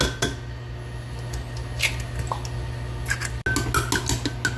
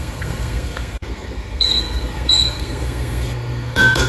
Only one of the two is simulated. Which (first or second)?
second